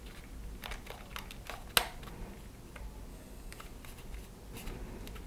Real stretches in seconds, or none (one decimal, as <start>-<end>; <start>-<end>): 0.0-3.1; 3.6-5.3